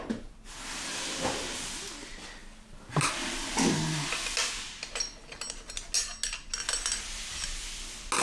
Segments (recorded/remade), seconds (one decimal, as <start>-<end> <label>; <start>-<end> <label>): 0.0-8.2 recorded